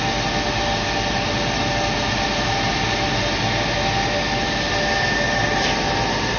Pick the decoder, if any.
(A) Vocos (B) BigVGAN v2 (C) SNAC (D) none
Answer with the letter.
D